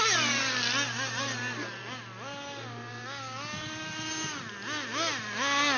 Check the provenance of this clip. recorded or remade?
recorded